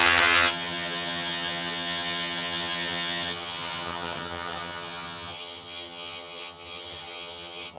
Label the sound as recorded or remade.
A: remade